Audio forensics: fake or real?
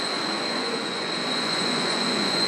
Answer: fake